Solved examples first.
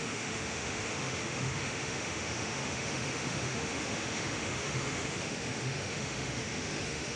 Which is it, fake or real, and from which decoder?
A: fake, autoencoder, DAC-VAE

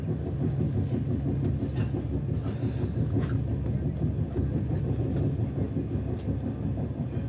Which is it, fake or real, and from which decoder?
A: real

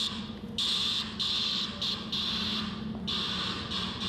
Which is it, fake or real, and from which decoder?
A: real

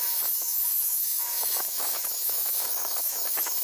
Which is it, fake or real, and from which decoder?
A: fake, autoencoder, DAC-VAE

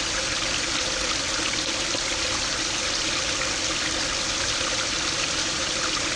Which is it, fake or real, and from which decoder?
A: real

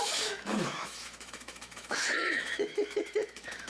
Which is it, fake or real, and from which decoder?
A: fake, autoencoder, DAC-VAE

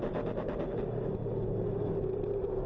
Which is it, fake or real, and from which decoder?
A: real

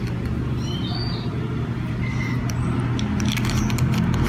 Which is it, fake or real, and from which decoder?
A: real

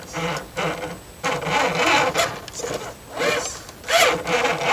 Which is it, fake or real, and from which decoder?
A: real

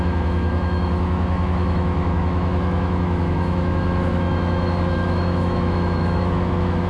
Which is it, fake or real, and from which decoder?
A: fake, autoencoder, DAC-VAE